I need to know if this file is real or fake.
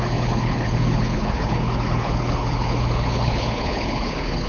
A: fake